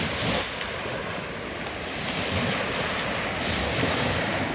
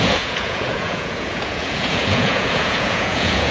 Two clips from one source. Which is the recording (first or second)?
first